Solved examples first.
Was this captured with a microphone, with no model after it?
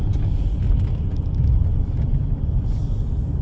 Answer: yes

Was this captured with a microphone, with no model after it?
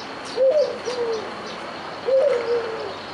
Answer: yes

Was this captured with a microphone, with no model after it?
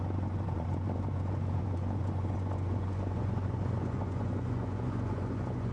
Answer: no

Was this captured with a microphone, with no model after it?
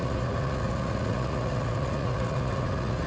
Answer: no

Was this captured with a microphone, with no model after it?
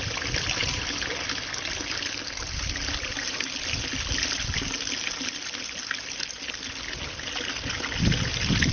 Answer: yes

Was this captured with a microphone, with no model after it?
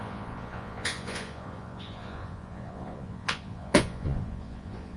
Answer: no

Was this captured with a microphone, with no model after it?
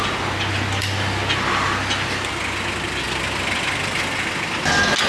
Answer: yes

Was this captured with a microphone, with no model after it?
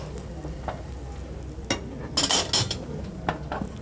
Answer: yes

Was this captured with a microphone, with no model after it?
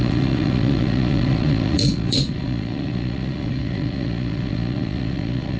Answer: no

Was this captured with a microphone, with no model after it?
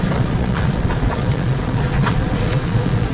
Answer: no